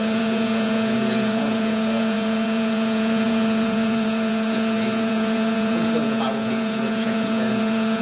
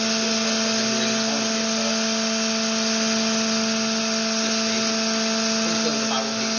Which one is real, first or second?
second